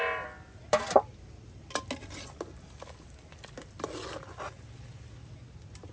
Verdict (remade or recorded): recorded